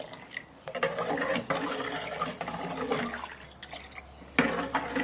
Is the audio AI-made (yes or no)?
no